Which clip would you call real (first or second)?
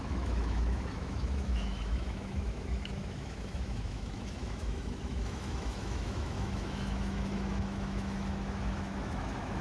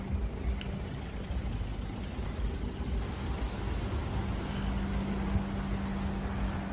second